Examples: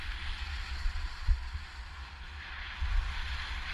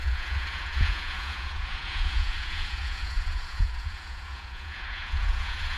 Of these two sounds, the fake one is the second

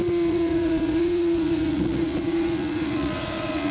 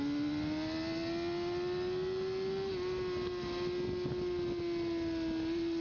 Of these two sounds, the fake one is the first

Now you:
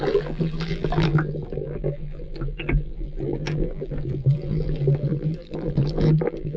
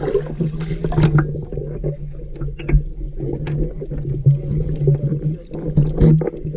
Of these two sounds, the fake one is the first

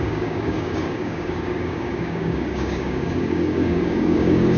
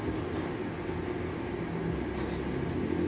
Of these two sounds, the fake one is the first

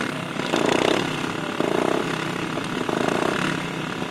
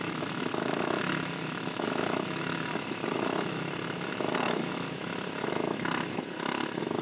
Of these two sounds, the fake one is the second